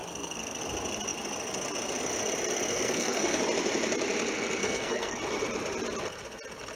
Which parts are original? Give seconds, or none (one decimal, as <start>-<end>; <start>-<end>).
0.6-2.7; 3.4-4.6; 5.2-6.8